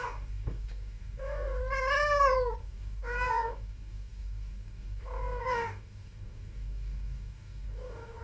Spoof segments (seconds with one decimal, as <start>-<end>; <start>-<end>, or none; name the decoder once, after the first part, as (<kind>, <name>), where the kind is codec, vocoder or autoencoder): 0.0-1.6 (codec, DAC); 2.6-8.2